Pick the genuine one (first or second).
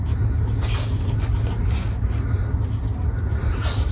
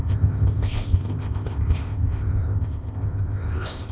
first